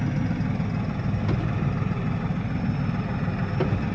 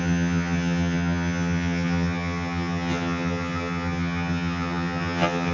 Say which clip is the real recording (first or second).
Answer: first